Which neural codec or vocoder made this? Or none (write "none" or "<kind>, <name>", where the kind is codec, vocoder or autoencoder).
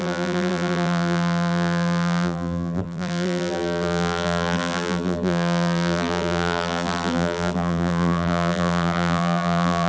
vocoder, BigVGAN v2